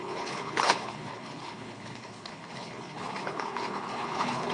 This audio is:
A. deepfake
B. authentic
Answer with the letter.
A